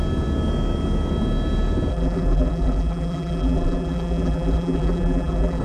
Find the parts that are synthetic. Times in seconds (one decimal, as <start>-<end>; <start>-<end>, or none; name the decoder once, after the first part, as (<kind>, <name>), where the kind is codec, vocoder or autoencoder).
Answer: 1.9-5.6 (vocoder, BigVGAN v2)